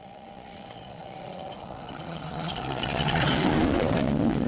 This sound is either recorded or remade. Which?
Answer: remade